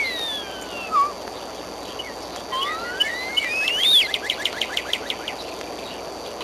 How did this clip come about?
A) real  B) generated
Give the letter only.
A